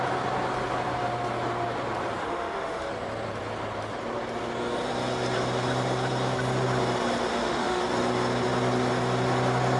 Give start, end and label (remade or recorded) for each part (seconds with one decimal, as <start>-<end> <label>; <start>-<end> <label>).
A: 0.0-2.2 recorded; 2.2-2.9 remade; 2.9-7.3 recorded; 7.3-7.8 remade; 7.8-9.8 recorded